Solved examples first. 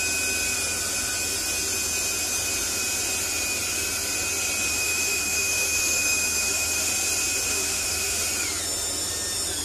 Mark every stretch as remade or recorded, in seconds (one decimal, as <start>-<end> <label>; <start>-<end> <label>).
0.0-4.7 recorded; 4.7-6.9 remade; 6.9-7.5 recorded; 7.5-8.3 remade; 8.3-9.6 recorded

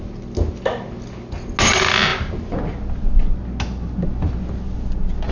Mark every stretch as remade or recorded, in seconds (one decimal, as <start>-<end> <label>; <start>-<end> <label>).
0.0-5.3 recorded

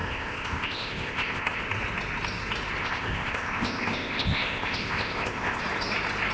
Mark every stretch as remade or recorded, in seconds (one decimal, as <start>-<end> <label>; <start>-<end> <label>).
0.0-1.6 remade; 1.6-2.8 recorded; 2.8-5.6 remade; 5.6-6.3 recorded

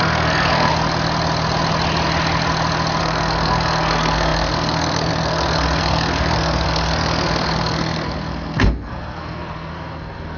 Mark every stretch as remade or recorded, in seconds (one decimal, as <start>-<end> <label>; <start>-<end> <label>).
0.0-0.7 remade; 0.7-3.0 recorded; 3.0-10.4 remade